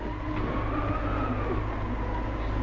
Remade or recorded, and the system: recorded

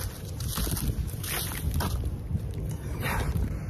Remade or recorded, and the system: recorded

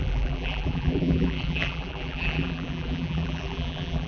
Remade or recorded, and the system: remade, vocoder, BigVGAN v2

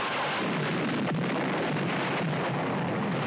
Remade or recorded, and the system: recorded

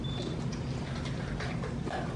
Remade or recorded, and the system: recorded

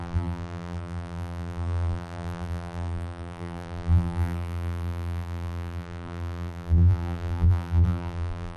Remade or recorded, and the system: remade, vocoder, BigVGAN v2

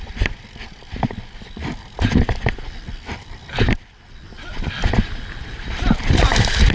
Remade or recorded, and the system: remade, vocoder, BigVGAN v2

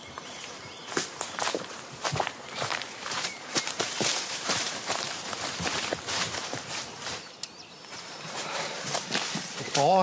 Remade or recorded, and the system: remade, vocoder, BigVGAN v2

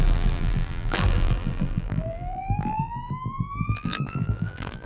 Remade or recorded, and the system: remade, vocoder, BigVGAN v2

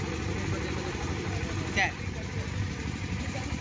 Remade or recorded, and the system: recorded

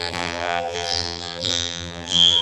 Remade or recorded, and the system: remade, vocoder, BigVGAN v2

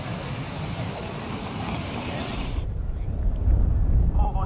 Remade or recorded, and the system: recorded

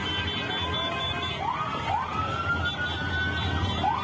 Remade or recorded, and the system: recorded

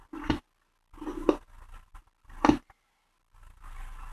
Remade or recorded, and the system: recorded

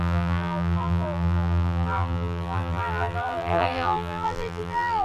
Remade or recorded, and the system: remade, vocoder, BigVGAN v2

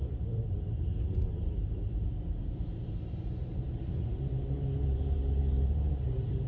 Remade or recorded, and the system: remade, vocoder, BigVGAN v2